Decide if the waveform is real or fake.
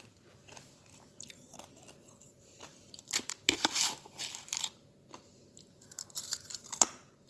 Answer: fake